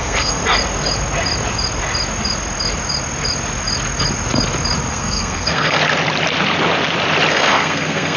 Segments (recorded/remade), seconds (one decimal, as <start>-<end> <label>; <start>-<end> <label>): 0.0-0.4 remade; 0.4-4.9 recorded; 4.9-5.8 remade; 5.8-7.3 recorded; 7.3-8.2 remade